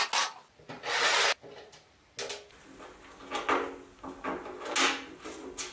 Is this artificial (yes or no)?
no